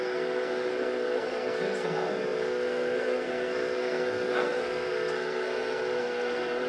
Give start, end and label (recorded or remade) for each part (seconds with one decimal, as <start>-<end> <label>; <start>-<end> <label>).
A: 0.0-6.7 remade